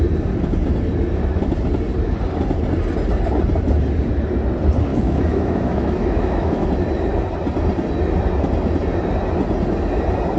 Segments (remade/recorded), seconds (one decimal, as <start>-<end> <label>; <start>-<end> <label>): 0.0-4.9 recorded; 4.9-6.7 remade; 6.7-10.4 recorded